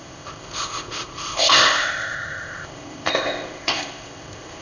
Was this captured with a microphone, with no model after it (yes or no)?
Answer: no